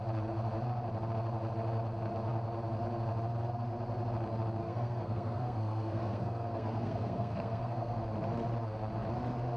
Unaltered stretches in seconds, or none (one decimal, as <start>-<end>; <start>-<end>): 0.0-4.6; 8.0-9.6